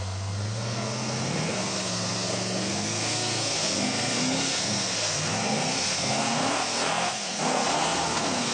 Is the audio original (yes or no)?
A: no